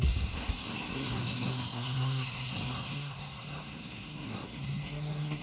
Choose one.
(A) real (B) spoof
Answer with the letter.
B